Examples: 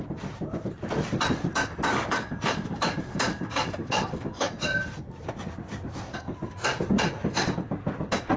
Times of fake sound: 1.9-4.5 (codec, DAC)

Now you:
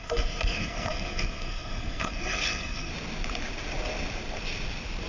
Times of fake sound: 0.0-2.9 (codec, SNAC)

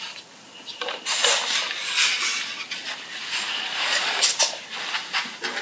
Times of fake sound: none

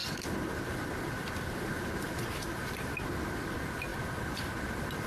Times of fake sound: 0.0-3.9 (vocoder, BigVGAN v2)

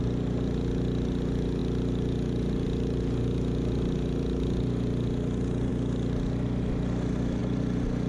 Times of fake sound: none